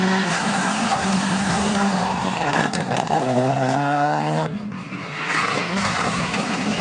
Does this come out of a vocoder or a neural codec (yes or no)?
yes